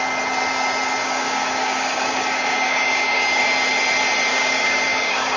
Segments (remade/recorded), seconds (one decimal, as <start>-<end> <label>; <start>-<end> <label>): 0.0-1.0 recorded; 1.0-3.4 remade; 3.4-4.3 recorded; 4.3-5.4 remade